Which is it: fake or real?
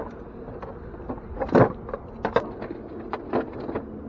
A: real